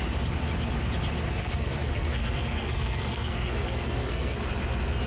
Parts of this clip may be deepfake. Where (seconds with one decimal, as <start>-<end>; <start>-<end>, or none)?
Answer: 1.4-4.5